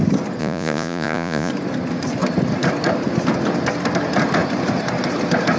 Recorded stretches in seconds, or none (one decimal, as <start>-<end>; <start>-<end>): 0.0-0.4; 1.5-5.6